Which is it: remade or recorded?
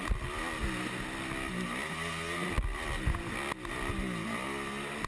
recorded